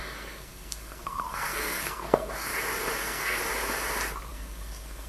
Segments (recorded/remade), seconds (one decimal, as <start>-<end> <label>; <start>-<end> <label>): 0.0-2.5 remade; 2.5-3.0 recorded; 3.0-3.4 remade; 3.4-4.3 recorded; 4.3-5.1 remade

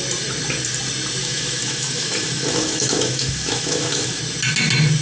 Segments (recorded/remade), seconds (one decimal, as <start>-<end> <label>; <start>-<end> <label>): 0.0-1.2 recorded; 1.2-4.2 remade; 4.2-5.0 recorded

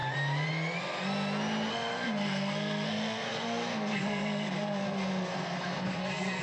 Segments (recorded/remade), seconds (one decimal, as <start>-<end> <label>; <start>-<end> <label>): 0.0-1.7 recorded; 1.7-6.4 remade

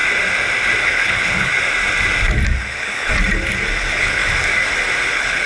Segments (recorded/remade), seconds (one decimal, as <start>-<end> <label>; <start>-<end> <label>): 0.0-0.8 recorded; 0.8-1.5 remade; 1.5-2.6 recorded; 2.6-3.1 remade; 3.1-3.8 recorded; 3.8-4.2 remade; 4.2-5.1 recorded; 5.1-5.5 remade

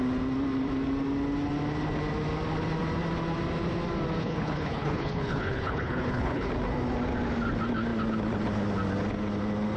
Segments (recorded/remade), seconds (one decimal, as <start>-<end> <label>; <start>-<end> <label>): 0.0-4.2 recorded; 4.2-6.5 remade; 6.5-9.8 recorded

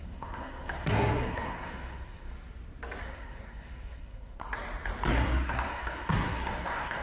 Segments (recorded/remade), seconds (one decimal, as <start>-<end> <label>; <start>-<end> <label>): 0.0-2.3 remade; 2.3-3.0 recorded; 3.0-4.4 remade; 4.4-5.1 recorded; 5.1-7.0 remade

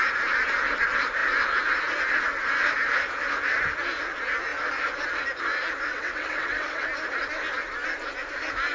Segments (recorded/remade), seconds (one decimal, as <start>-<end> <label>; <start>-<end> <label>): 0.0-5.9 recorded; 5.9-6.9 remade; 6.9-8.7 recorded

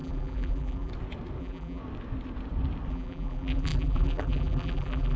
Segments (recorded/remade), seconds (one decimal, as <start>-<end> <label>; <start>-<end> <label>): 0.0-0.9 remade; 0.9-1.4 recorded; 1.4-1.8 remade; 1.8-2.9 recorded; 2.9-5.2 remade